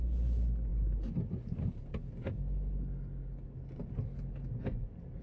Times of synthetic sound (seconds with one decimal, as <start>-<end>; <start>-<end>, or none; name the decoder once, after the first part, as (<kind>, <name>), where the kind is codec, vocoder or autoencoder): none